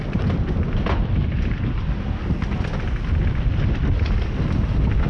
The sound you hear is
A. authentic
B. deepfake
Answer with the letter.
A